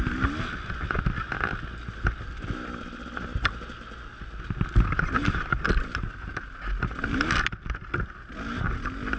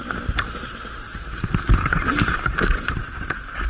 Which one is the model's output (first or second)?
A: second